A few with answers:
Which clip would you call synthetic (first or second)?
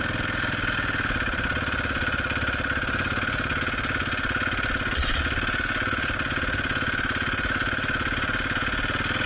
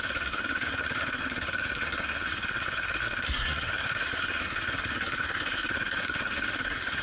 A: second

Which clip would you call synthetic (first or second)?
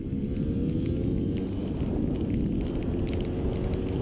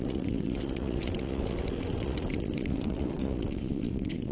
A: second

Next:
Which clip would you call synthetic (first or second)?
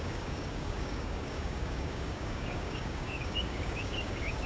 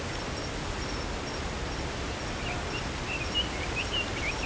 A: first